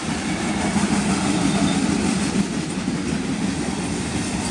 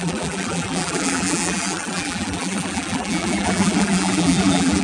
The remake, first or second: second